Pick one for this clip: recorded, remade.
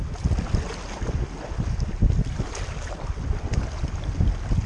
recorded